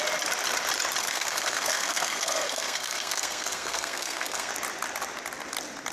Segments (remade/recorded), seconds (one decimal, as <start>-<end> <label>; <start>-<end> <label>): 0.0-1.0 recorded; 1.0-4.5 remade; 4.5-5.9 recorded